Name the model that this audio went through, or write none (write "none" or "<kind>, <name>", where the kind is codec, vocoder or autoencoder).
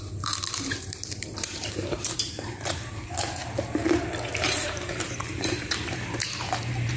vocoder, BigVGAN v2